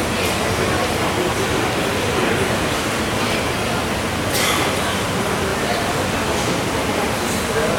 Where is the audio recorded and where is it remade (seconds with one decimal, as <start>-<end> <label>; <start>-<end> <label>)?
0.0-7.8 recorded